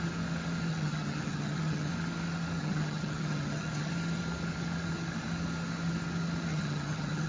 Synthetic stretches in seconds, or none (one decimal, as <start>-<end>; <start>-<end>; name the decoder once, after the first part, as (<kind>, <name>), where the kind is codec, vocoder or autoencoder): 0.7-1.9 (vocoder, HiFi-GAN); 2.6-3.9; 6.5-7.3